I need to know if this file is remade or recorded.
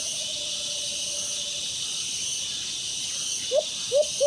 recorded